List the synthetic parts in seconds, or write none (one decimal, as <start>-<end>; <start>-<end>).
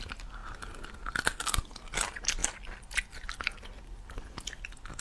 none